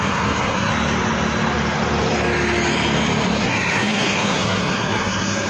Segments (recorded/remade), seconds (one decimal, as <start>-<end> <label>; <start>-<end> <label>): 0.0-0.7 remade; 0.7-3.4 recorded; 3.4-5.5 remade